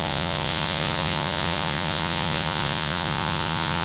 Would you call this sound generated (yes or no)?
yes